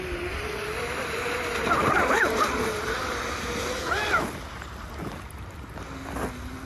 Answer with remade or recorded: recorded